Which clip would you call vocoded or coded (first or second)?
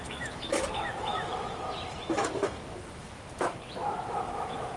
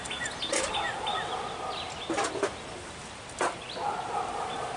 first